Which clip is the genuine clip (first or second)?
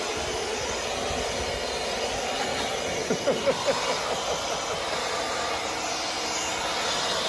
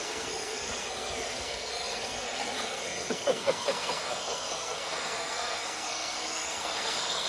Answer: first